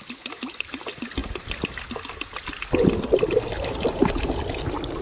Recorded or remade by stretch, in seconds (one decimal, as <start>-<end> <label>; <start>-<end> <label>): 0.0-5.0 recorded